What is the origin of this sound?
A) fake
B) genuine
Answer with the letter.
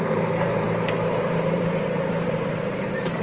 A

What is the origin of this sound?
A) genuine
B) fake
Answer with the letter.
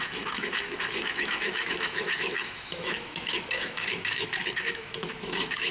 B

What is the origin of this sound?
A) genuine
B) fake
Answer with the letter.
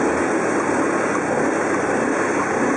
A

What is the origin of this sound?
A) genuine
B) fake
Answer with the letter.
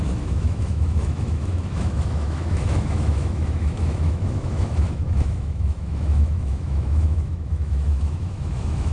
B